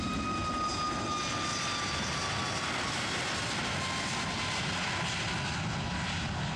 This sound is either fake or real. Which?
real